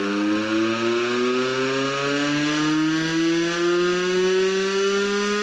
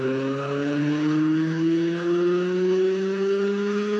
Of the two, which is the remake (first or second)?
second